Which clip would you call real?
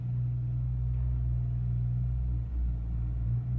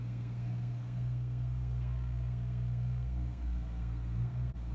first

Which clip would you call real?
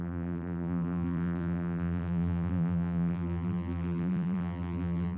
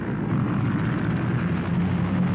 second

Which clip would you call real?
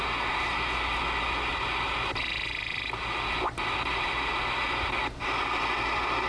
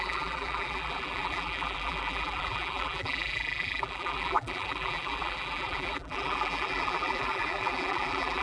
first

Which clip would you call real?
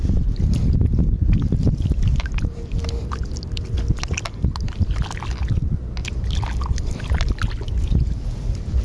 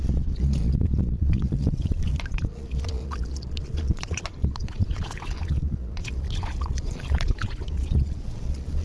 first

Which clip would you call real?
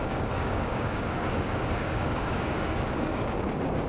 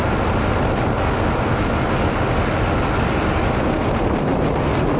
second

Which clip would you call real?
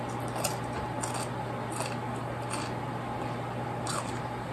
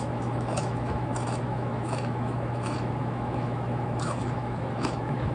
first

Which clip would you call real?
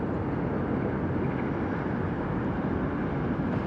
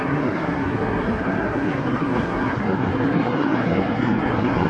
first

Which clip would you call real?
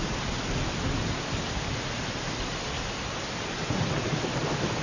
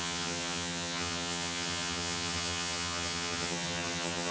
first